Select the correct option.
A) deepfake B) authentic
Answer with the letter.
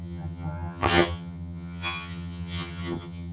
A